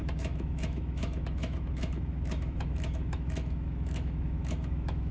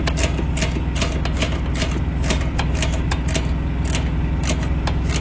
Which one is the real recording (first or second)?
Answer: second